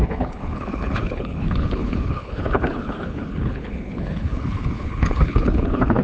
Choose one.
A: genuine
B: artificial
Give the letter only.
B